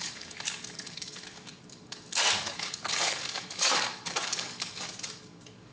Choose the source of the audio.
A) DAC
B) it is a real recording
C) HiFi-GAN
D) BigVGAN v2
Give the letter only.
A